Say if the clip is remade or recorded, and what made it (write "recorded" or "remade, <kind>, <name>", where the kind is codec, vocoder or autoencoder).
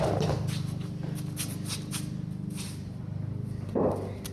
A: recorded